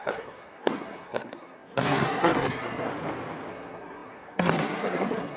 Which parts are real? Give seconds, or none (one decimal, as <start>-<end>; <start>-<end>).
2.9-3.5